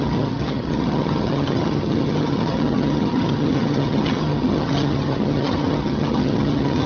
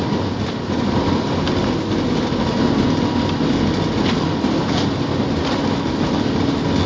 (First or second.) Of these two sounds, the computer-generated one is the first